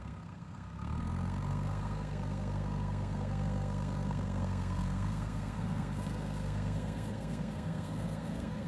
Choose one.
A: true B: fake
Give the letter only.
B